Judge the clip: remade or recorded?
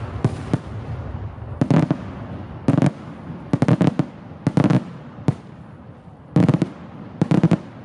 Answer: recorded